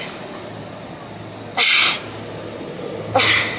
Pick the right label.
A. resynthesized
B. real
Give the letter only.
B